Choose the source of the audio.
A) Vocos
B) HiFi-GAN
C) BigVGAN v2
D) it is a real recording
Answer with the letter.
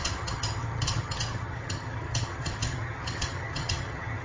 B